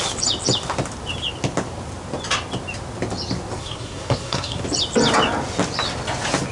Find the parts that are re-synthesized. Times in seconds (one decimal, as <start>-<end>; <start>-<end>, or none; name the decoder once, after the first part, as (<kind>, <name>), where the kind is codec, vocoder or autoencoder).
3.6-4.6 (codec, SNAC)